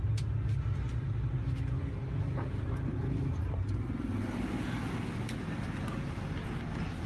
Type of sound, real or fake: real